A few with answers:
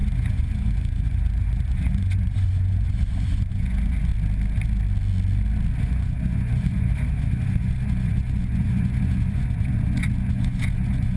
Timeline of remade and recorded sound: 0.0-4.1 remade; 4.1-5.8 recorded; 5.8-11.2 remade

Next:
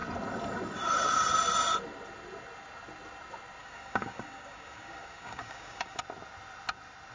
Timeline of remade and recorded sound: 0.0-3.6 recorded; 3.6-6.0 remade; 6.0-7.1 recorded

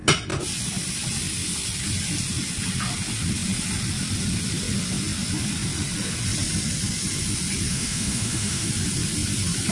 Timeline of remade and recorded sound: 0.0-7.7 recorded; 7.7-8.7 remade; 8.7-9.7 recorded

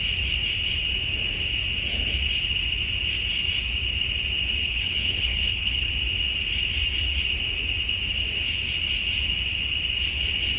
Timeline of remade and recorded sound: 0.0-4.6 recorded; 4.6-5.9 remade; 5.9-10.6 recorded

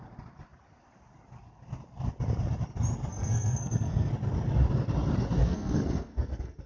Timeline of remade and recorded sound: 0.0-3.1 recorded; 3.1-4.1 remade; 4.1-5.4 recorded; 5.4-6.7 remade

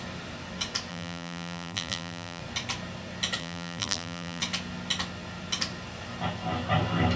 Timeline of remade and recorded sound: 0.0-0.9 recorded; 0.9-2.4 remade; 2.4-3.4 recorded; 3.4-4.4 remade; 4.4-7.2 recorded